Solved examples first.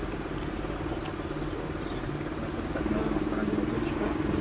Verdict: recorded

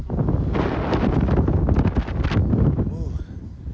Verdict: recorded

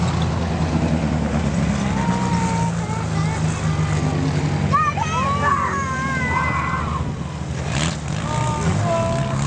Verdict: recorded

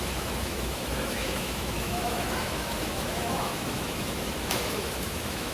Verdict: remade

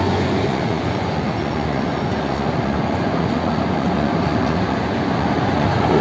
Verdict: remade